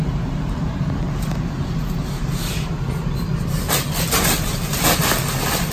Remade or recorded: recorded